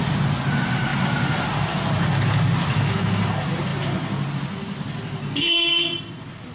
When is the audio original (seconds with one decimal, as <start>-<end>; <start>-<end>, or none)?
0.0-5.2; 5.9-6.5